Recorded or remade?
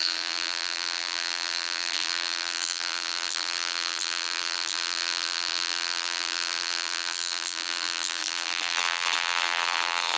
remade